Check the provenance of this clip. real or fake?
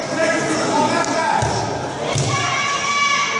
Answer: real